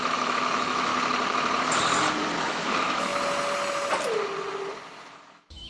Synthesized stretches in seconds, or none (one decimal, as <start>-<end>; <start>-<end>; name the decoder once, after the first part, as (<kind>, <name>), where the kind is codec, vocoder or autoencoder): 0.0-0.9 (autoencoder, DAC-VAE); 2.4-3.1; 5.3-5.7